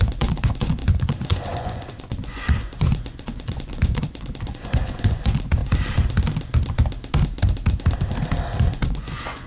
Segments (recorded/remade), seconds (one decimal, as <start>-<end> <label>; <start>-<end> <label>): 0.0-5.6 remade; 5.6-8.6 recorded; 8.6-9.5 remade